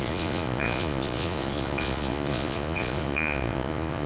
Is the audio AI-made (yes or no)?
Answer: yes